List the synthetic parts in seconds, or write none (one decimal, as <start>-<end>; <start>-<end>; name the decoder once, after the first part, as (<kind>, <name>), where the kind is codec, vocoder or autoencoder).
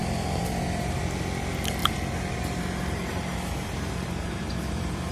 0.0-1.0 (vocoder, BigVGAN v2); 1.8-5.1